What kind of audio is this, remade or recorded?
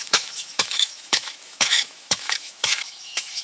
remade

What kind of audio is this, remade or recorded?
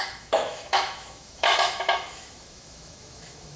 remade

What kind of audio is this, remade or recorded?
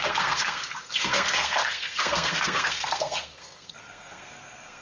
remade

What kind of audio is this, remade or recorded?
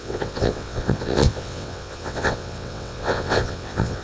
remade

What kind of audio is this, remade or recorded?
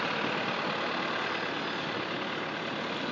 recorded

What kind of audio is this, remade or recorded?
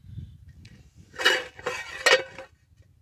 recorded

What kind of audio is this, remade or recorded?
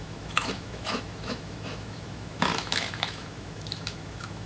remade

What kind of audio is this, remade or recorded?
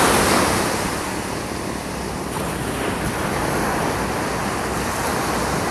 recorded